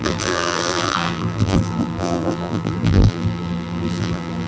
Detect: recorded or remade remade